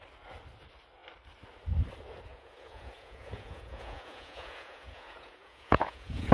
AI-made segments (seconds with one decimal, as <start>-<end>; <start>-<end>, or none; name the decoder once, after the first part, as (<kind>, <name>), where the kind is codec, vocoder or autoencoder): 2.3-6.3 (vocoder, Vocos)